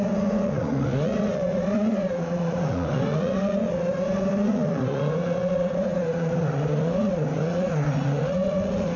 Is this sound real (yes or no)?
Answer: no